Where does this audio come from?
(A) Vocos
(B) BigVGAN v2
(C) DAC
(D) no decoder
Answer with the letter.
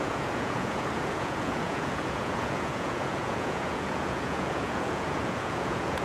A